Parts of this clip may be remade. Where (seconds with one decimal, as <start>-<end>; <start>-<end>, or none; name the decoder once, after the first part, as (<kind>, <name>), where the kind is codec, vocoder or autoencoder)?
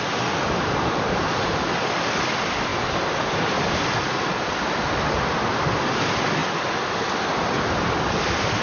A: 0.0-6.4 (vocoder, BigVGAN v2); 7.4-8.6